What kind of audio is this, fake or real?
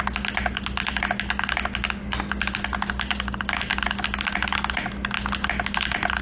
real